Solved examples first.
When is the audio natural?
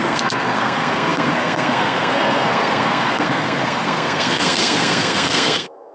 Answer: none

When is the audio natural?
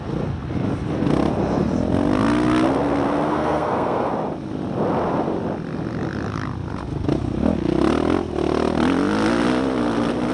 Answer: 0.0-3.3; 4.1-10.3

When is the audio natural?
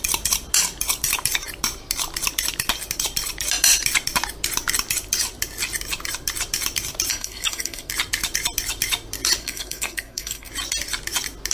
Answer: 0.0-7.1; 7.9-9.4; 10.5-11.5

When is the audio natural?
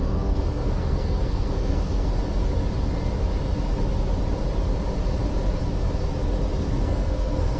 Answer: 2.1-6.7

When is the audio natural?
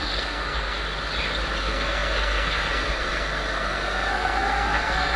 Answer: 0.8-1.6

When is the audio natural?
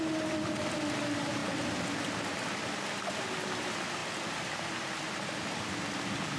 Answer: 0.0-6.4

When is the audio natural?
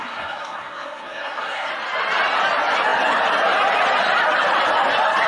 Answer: 1.7-5.3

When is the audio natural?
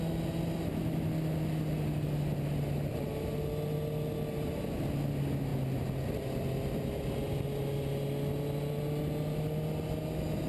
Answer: 0.0-10.5